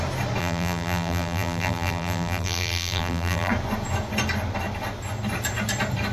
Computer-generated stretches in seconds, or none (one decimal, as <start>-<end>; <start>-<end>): 0.4-3.5